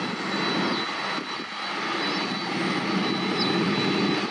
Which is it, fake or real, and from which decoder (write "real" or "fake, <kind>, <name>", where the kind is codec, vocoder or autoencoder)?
real